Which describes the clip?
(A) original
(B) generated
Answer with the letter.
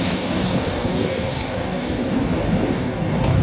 B